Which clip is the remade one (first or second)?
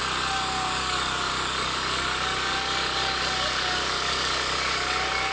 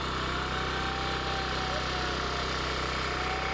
first